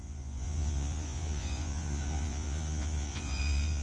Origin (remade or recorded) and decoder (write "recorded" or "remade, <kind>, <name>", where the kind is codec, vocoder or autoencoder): remade, vocoder, Vocos